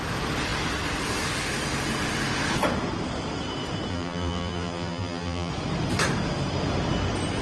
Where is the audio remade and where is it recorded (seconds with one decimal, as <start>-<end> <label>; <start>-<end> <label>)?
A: 0.0-3.9 recorded; 3.9-5.5 remade; 5.5-7.4 recorded